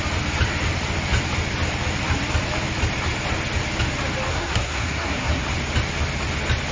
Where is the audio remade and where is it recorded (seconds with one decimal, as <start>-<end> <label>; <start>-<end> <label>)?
0.0-4.3 recorded; 4.3-5.4 remade; 5.4-6.7 recorded